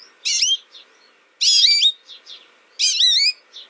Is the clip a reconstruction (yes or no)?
no